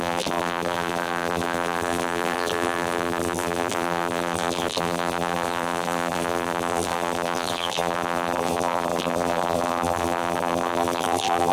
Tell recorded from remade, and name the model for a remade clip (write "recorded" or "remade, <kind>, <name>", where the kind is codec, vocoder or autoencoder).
remade, vocoder, BigVGAN v2